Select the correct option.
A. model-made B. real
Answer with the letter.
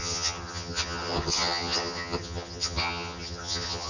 A